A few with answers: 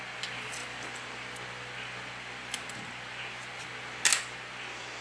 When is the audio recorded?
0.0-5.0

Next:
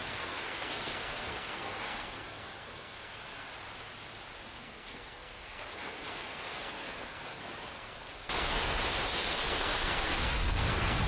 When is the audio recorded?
3.5-4.6; 8.8-9.3

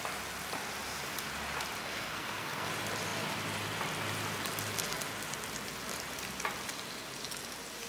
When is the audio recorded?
0.0-1.8; 2.7-7.9

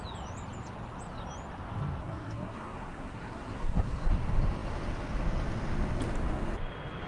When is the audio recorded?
0.0-2.0; 4.1-7.1